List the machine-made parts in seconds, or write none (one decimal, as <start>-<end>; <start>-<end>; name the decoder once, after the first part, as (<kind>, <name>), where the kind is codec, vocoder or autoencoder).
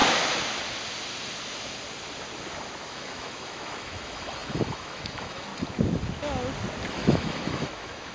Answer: 2.9-5.5 (autoencoder, DAC-VAE); 6.9-8.1